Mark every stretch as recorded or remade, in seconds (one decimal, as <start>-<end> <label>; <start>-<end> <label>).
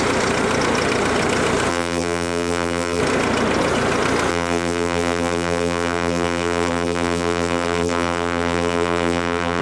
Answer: 0.0-1.7 recorded; 1.7-3.0 remade; 3.0-4.3 recorded; 4.3-9.6 remade